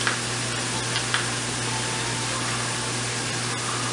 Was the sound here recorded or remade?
recorded